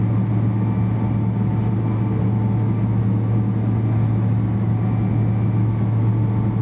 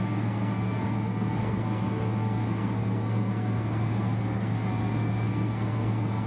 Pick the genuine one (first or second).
first